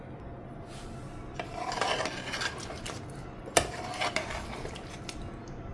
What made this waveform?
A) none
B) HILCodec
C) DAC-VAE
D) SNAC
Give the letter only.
A